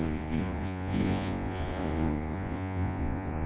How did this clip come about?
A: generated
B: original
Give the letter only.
A